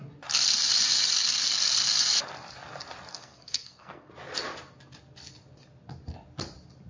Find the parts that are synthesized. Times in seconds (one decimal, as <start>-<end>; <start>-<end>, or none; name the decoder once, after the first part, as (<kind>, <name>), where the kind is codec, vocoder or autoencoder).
3.1-4.1 (codec, SNAC)